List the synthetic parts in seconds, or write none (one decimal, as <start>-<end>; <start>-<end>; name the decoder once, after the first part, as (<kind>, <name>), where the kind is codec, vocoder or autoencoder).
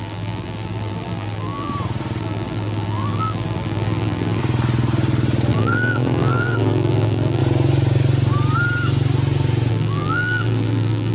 0.0-1.7 (vocoder, BigVGAN v2); 2.2-4.4; 5.5-7.4; 9.7-11.1